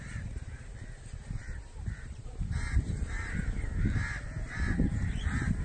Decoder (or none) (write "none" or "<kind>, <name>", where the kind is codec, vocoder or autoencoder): vocoder, BigVGAN v2